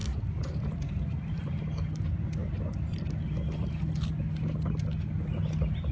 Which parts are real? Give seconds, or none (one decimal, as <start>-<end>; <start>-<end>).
1.6-5.9